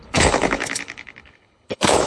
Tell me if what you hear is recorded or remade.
remade